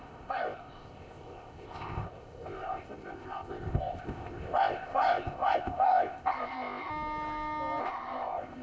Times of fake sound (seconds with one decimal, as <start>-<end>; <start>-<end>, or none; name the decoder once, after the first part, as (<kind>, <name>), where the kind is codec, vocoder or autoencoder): 0.0-6.9 (codec, ZipCodec); 7.8-8.6